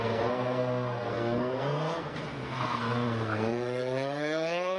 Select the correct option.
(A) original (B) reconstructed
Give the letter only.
B